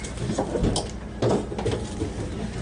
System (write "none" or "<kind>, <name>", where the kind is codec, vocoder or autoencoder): none